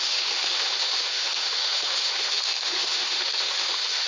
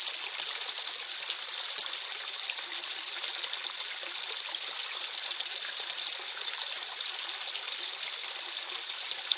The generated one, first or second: first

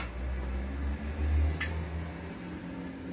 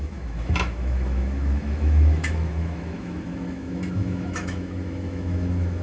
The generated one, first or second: second